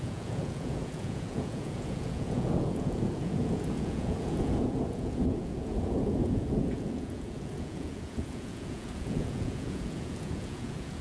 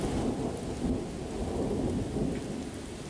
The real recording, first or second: second